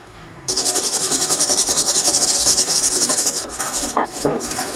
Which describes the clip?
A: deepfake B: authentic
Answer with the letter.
A